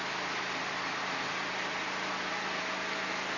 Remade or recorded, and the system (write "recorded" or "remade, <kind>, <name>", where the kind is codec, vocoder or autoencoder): recorded